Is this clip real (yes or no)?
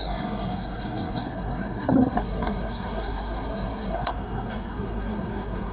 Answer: no